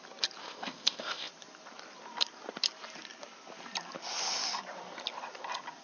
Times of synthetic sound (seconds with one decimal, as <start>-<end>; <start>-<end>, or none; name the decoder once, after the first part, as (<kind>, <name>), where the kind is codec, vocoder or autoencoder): 0.4-1.3 (codec, ZipCodec)